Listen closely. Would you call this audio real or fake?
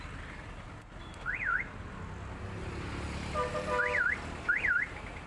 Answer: real